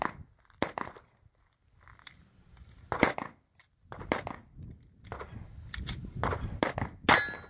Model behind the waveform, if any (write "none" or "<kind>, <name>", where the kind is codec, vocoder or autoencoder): none